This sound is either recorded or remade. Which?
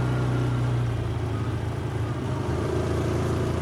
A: recorded